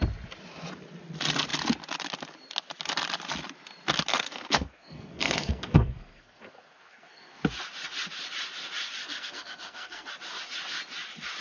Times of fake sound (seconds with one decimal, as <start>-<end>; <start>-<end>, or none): 4.1-7.4; 9.0-10.1